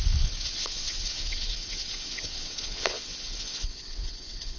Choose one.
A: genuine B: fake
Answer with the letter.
B